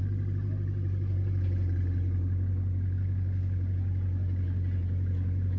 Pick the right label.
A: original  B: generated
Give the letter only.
A